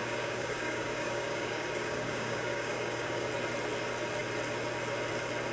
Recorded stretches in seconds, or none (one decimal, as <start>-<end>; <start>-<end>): 3.3-5.5